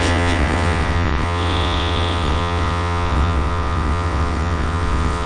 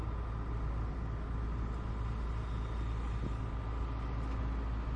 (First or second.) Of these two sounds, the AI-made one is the first